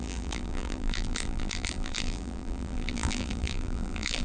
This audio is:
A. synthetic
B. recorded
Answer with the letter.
A